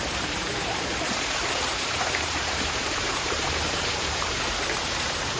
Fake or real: fake